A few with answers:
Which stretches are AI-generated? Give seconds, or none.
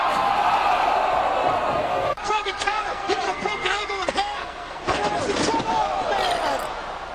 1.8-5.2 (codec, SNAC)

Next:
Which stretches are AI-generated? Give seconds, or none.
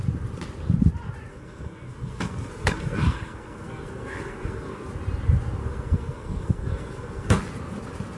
1.3-4.9 (codec, SNAC); 5.6-7.4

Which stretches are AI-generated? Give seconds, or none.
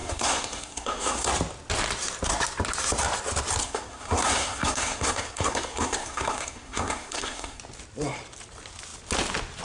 0.0-1.3 (codec, SNAC); 3.6-7.6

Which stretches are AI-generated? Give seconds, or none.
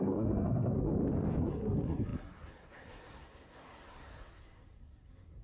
0.0-0.9 (codec, SNAC); 1.4-5.4